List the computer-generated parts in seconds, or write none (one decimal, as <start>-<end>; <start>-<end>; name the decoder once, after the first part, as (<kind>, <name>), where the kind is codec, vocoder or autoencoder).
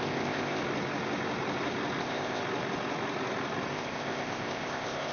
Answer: 0.0-0.6 (codec, ZipCodec); 2.0-2.4; 3.7-5.1